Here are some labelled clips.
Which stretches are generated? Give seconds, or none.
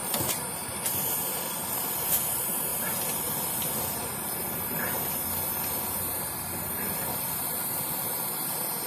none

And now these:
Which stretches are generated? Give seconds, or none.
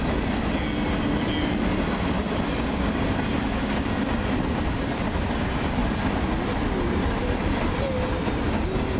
none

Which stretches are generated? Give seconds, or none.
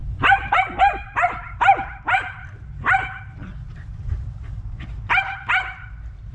0.0-0.8; 1.7-5.5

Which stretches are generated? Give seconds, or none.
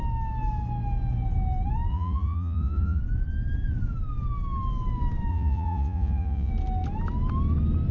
1.9-3.0; 5.3-6.5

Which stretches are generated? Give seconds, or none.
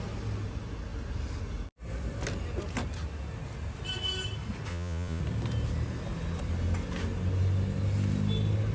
4.7-5.2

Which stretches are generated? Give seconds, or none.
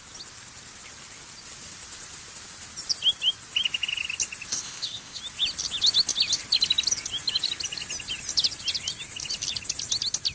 4.5-5.2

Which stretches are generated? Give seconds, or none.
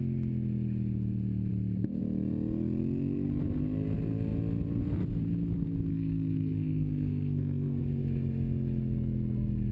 5.9-7.8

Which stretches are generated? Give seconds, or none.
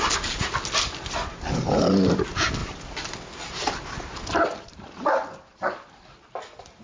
none